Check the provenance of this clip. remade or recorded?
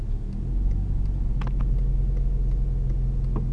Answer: recorded